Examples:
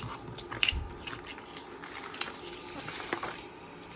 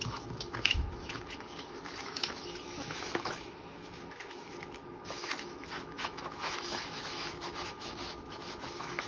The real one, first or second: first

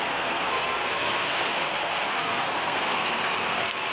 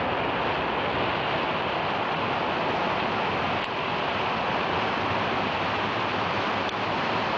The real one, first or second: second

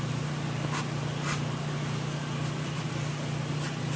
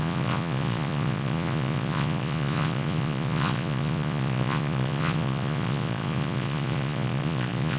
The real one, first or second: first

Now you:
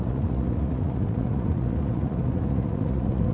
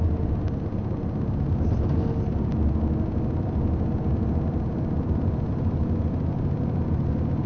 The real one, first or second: second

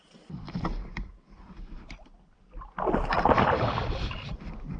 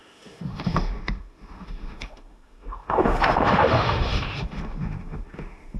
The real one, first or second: first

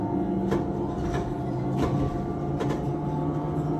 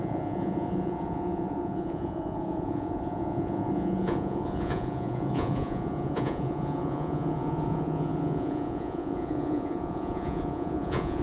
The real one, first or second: first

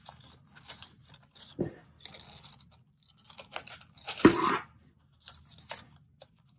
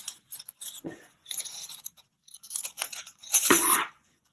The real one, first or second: first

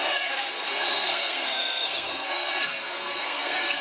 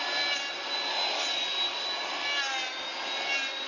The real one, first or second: second